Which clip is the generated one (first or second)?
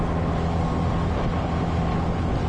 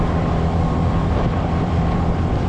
second